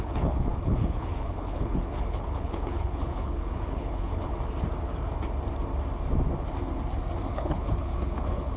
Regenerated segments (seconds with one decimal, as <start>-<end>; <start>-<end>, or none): 0.0-4.3; 7.3-8.6